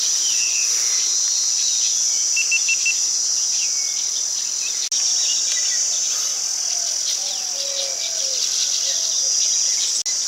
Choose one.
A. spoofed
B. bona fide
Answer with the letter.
B